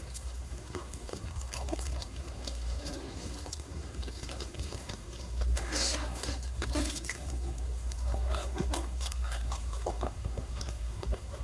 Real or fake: fake